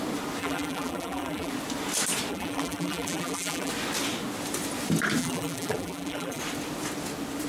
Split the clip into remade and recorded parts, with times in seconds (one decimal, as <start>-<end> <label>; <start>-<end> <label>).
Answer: 0.0-0.4 recorded; 0.4-1.5 remade; 1.5-2.3 recorded; 2.3-3.7 remade; 3.7-5.2 recorded; 5.2-6.4 remade; 6.4-7.5 recorded